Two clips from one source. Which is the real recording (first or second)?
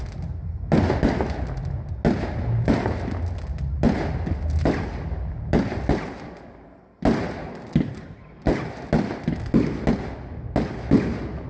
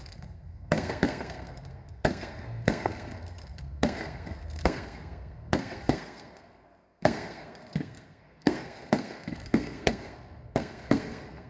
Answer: first